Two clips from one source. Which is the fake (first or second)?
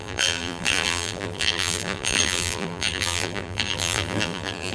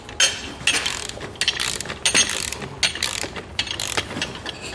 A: first